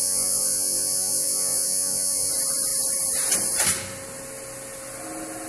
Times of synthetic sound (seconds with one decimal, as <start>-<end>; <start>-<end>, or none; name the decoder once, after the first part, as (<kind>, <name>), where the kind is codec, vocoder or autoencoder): 0.0-2.3 (vocoder, Vocos)